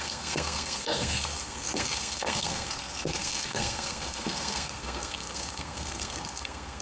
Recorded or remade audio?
remade